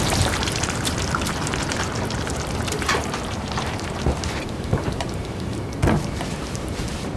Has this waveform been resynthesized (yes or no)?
yes